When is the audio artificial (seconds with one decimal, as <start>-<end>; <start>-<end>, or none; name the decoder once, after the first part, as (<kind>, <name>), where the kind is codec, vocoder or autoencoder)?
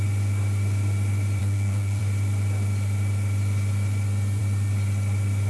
1.4-2.0 (codec, SNAC)